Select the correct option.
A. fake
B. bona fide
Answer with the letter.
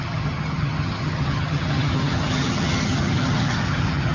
A